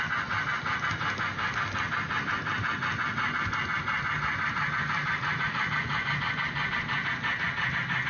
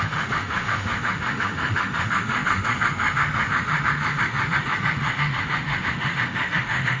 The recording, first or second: first